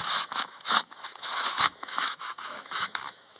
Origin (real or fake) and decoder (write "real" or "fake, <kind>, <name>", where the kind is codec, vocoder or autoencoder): fake, autoencoder, DAC-VAE